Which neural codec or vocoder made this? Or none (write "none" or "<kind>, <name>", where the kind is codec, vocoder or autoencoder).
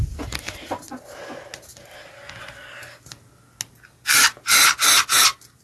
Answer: none